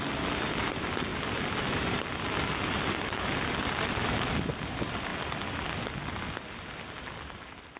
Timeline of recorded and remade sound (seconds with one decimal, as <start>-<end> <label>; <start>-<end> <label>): 0.0-7.8 recorded